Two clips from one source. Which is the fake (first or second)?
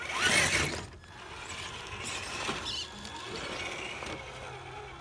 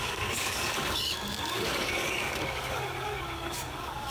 second